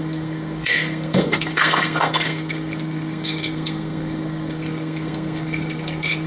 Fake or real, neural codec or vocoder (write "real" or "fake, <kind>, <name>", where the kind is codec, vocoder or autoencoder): fake, codec, SNAC